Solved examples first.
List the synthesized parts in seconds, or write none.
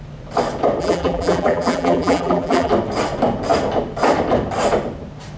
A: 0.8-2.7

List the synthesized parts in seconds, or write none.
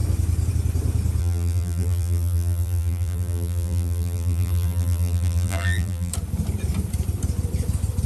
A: 1.2-6.1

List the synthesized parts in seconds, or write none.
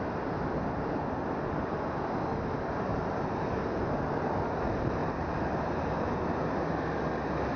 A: 2.9-4.0; 5.0-5.7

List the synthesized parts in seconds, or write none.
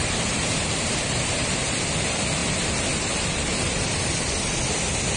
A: 0.0-2.4; 3.0-5.2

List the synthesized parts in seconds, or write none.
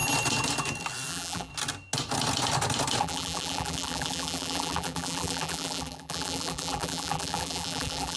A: 1.1-1.5; 3.0-8.2